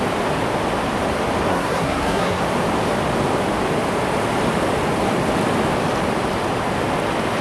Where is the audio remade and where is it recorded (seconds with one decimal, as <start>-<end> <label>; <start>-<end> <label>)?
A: 0.0-1.5 recorded; 1.5-2.4 remade; 2.4-7.4 recorded